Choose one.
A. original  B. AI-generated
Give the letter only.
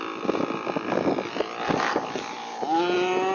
A